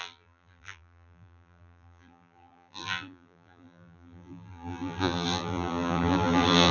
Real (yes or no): no